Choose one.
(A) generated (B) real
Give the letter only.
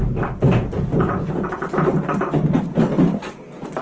B